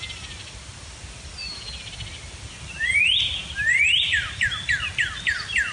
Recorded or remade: recorded